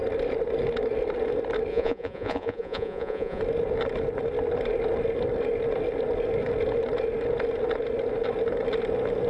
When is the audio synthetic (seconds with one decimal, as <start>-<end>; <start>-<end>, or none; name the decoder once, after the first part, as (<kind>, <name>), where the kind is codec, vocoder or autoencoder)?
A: 1.7-3.4 (vocoder, Vocos)

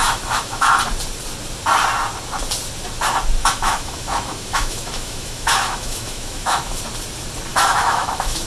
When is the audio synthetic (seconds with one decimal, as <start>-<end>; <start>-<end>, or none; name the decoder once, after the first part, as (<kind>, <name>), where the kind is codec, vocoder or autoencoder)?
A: 0.0-0.7 (autoencoder, DAC-VAE); 3.4-6.8; 7.5-8.5

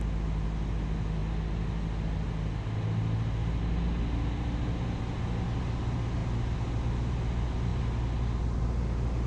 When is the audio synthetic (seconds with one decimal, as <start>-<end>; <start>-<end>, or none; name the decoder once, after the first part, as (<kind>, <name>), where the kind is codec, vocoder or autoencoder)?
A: none

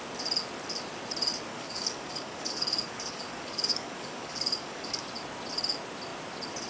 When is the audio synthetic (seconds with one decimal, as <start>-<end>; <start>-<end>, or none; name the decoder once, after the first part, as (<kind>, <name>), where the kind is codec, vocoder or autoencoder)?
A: 1.5-5.0 (codec, DAC)